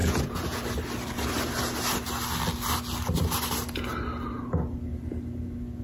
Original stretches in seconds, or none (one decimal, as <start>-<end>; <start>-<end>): 0.6-5.8

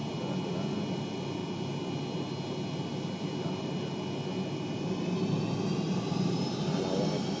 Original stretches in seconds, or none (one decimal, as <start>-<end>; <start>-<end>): 0.0-7.4

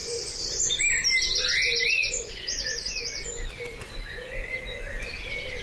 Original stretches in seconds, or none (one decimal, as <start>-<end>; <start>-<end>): 0.8-1.7; 5.1-5.6

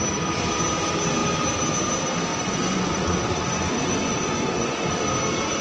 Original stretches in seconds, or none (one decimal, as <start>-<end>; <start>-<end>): 0.0-2.3; 4.9-5.6